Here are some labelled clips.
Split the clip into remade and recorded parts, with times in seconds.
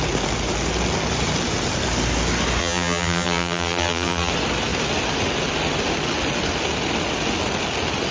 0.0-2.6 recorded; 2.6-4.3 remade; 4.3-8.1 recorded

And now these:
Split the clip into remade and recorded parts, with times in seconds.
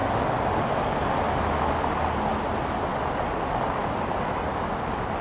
0.0-5.2 recorded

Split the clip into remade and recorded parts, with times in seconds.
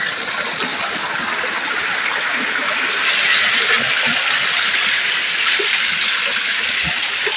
0.0-7.4 recorded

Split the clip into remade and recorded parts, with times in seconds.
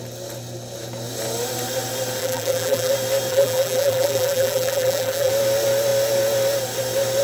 0.0-2.2 recorded; 2.2-2.9 remade; 2.9-3.3 recorded; 3.3-5.3 remade; 5.3-7.2 recorded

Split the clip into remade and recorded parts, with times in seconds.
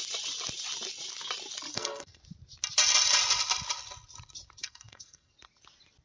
0.0-1.7 recorded; 1.7-2.2 remade; 2.2-4.6 recorded; 4.6-5.3 remade; 5.3-6.0 recorded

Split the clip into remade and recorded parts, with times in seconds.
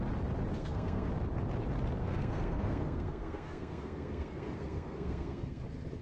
0.0-0.6 recorded; 0.6-1.1 remade; 1.1-2.0 recorded; 2.0-5.6 remade; 5.6-6.0 recorded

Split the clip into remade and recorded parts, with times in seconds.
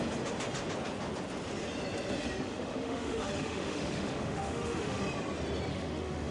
0.0-2.5 recorded; 2.5-5.0 remade; 5.0-5.7 recorded; 5.7-6.3 remade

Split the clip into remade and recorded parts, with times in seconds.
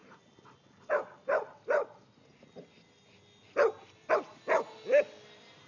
0.0-5.7 recorded